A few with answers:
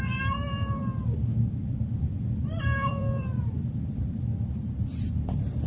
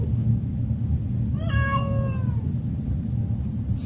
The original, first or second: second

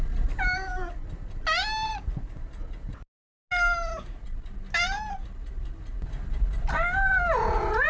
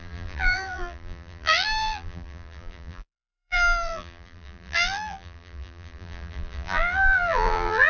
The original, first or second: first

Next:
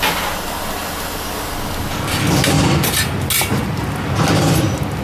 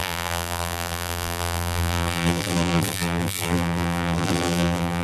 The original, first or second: first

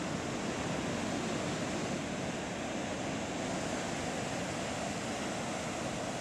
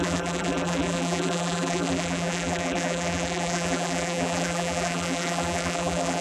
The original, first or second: first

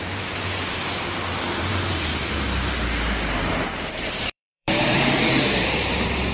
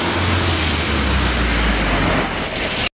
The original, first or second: second